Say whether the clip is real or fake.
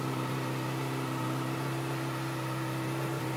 real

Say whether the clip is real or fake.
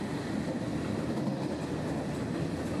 real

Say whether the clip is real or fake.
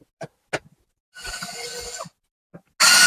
real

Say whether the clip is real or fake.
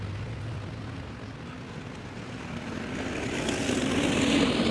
real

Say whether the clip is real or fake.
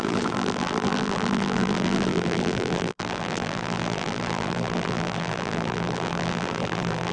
fake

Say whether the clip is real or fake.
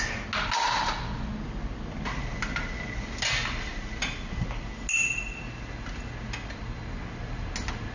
real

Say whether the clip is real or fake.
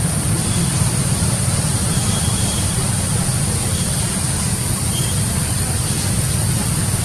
fake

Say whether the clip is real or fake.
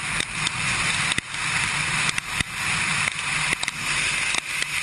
real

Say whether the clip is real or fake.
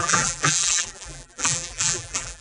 fake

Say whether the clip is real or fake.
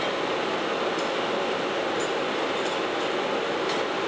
real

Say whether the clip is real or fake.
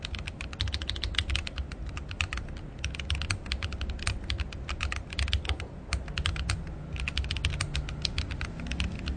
real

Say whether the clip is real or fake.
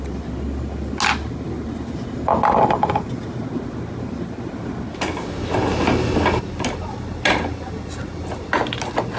real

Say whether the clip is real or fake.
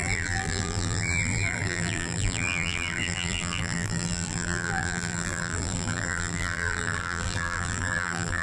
fake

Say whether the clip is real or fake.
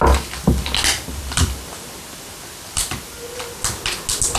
real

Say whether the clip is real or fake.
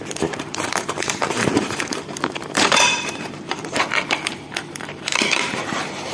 fake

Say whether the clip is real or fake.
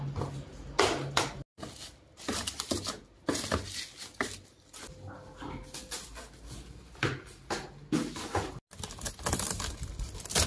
real